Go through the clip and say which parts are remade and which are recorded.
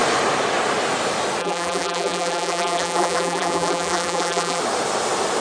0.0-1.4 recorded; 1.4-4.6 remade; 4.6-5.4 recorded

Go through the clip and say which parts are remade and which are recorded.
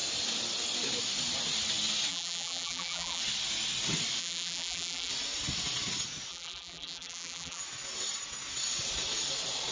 0.0-2.1 recorded; 2.1-3.2 remade; 3.2-4.2 recorded; 4.2-5.1 remade; 5.1-6.3 recorded; 6.3-7.6 remade; 7.6-9.7 recorded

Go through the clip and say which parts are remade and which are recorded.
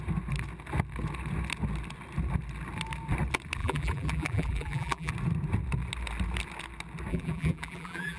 0.0-3.6 recorded; 3.6-5.1 remade; 5.1-7.1 recorded; 7.1-8.2 remade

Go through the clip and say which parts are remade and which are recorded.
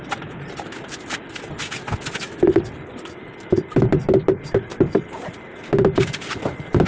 0.0-4.7 recorded; 4.7-5.3 remade; 5.3-6.9 recorded